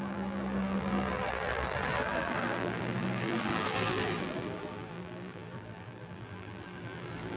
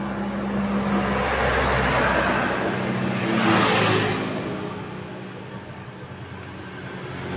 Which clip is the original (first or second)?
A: second